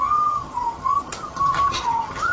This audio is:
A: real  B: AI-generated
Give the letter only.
B